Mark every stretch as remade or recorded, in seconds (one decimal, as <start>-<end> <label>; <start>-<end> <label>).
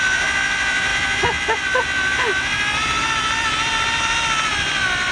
0.0-5.1 remade